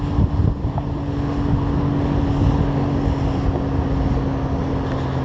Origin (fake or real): real